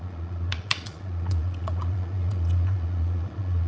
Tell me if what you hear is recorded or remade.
remade